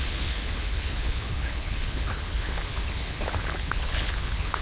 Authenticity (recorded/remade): remade